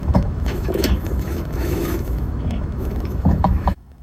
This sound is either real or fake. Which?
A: fake